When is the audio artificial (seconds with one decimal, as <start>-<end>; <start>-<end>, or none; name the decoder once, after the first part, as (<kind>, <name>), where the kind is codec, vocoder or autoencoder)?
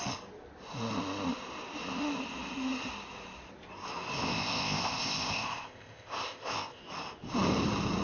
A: 4.2-6.8 (codec, ZipCodec)